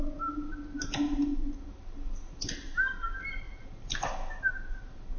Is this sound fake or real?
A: real